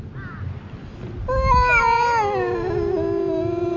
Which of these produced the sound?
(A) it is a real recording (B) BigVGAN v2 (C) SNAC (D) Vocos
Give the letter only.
A